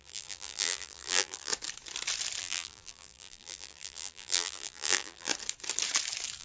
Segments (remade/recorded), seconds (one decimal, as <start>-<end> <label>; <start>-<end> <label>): 0.0-1.5 remade; 1.5-2.4 recorded; 2.4-5.3 remade; 5.3-6.4 recorded